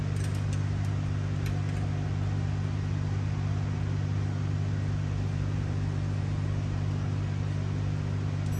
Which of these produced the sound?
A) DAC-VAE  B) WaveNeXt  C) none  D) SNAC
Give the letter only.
C